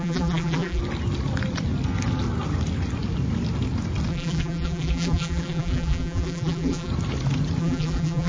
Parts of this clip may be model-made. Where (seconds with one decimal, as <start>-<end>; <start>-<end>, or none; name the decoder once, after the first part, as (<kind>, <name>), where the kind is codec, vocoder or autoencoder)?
0.0-0.8 (vocoder, BigVGAN v2); 4.1-6.9; 7.6-8.3